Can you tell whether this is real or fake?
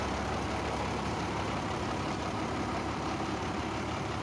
fake